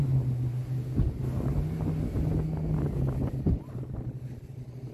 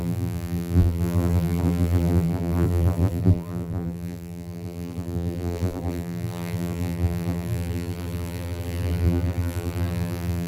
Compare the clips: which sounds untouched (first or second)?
first